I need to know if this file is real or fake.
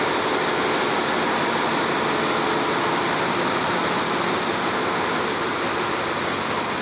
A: real